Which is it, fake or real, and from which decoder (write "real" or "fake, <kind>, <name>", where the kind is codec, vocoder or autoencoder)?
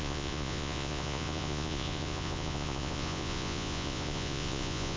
fake, vocoder, Vocos